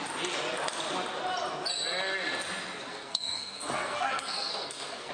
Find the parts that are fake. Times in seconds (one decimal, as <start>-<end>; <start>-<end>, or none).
2.9-5.1

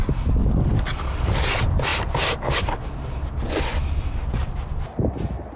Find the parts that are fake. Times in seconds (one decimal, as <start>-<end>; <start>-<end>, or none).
0.4-1.0

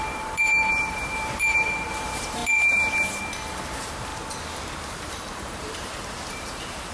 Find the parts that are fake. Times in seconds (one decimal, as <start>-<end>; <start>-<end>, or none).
0.0-4.1; 4.9-6.9